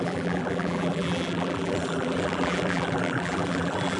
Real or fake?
fake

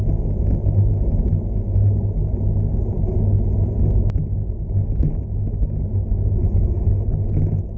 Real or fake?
real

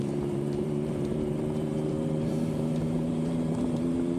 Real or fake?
fake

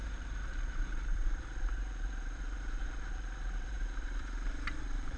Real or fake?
fake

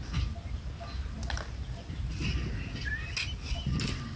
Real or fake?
real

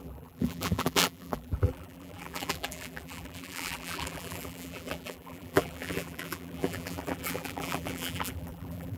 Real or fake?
fake